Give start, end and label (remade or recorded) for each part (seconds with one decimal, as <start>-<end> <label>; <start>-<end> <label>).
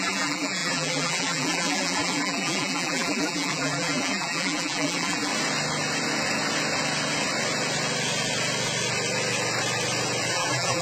0.0-5.3 remade; 5.3-10.3 recorded; 10.3-10.8 remade